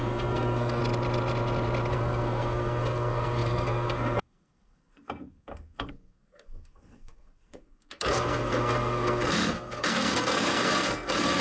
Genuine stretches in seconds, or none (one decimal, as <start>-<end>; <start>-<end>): 0.8-1.9